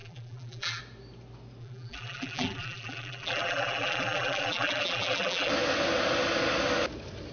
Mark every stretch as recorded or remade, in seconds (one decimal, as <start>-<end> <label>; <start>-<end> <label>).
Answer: 0.0-0.8 remade; 0.8-1.6 recorded; 1.6-5.5 remade; 5.5-7.3 recorded